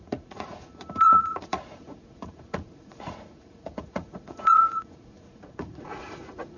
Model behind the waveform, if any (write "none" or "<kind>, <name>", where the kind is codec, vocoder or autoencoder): vocoder, Vocos